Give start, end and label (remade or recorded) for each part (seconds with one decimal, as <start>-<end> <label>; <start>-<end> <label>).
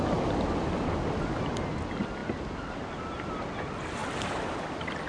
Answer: 0.0-5.1 recorded